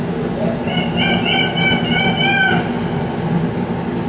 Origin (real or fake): real